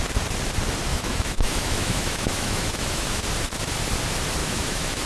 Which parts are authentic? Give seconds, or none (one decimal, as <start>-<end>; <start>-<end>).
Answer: 0.0-0.9; 3.2-4.4